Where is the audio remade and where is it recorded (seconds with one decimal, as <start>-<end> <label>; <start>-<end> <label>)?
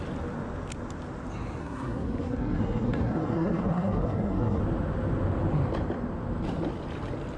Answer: 0.0-1.6 recorded; 1.6-4.6 remade; 4.6-7.4 recorded